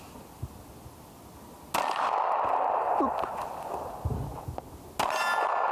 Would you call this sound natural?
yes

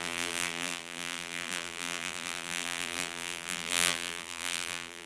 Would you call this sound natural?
no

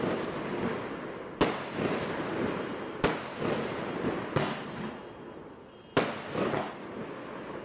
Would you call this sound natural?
yes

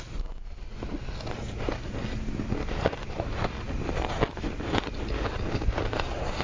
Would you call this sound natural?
yes